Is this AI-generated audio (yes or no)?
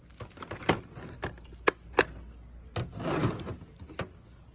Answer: no